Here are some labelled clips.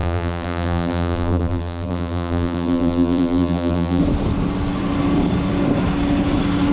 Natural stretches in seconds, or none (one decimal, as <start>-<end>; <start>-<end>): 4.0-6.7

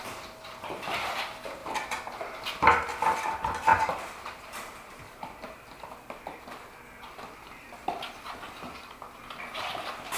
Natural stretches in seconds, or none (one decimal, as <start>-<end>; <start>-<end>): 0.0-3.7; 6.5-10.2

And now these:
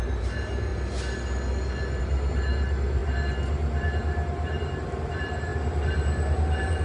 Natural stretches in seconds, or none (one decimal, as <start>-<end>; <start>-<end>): 0.7-2.0

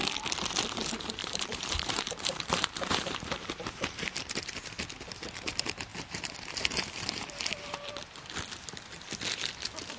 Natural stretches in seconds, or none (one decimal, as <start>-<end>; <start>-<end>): 0.0-1.2; 4.2-5.9; 7.7-10.0